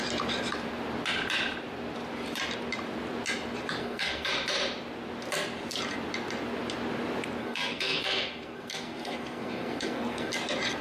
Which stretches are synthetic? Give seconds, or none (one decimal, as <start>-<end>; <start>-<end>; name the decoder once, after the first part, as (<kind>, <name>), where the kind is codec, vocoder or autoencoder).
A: 3.8-4.3 (codec, SNAC); 7.4-10.3